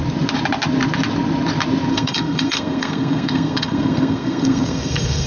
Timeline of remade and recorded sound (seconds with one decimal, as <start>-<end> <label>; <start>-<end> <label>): 0.0-1.9 recorded; 1.9-5.3 remade